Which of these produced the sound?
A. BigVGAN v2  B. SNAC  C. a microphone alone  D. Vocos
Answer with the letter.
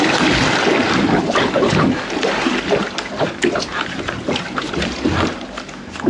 C